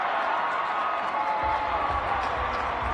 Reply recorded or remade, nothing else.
remade